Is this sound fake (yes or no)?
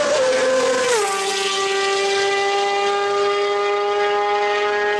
no